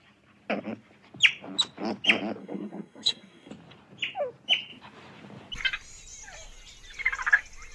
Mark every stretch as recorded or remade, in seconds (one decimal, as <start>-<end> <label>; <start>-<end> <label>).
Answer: 0.0-2.4 recorded; 2.4-3.5 remade; 3.5-7.7 recorded